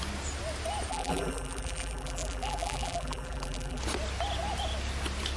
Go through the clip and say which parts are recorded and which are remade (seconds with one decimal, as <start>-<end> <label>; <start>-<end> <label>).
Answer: 0.0-0.9 recorded; 0.9-3.8 remade; 3.8-5.4 recorded